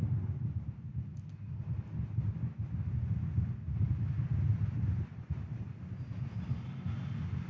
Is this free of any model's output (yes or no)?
yes